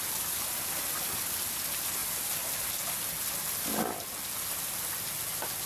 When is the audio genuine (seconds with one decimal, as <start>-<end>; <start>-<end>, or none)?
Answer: 2.0-5.7